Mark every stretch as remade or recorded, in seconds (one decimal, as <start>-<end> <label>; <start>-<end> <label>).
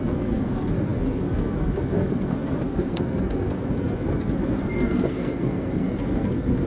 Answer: 0.0-6.7 remade